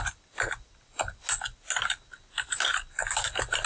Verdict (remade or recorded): recorded